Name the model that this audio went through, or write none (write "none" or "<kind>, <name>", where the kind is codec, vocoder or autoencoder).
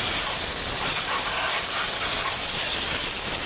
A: none